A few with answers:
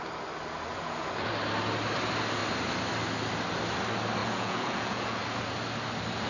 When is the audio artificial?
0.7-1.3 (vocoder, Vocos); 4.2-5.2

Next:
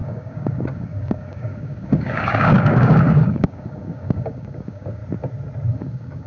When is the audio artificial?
0.0-5.0 (codec, DAC); 5.7-6.3